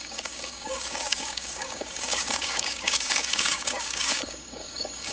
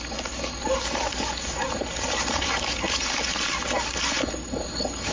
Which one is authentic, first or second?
second